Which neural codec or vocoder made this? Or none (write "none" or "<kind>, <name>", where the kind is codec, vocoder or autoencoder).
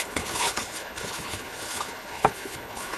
codec, HILCodec